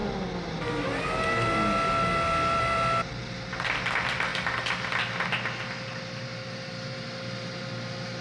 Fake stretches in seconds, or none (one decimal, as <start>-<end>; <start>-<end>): none